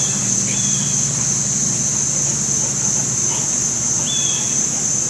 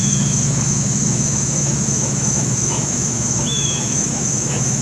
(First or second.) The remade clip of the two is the second